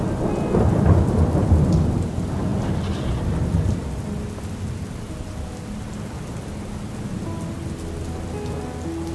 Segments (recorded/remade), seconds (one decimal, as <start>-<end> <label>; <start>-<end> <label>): 0.0-9.1 recorded